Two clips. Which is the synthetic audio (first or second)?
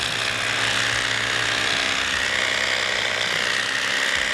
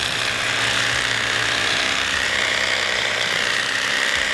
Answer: second